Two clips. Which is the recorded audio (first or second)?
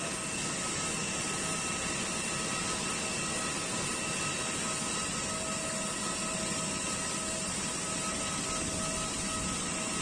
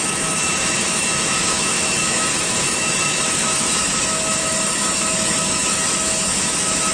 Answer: first